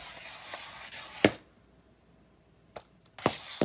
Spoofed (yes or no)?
no